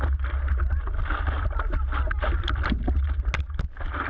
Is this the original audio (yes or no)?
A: yes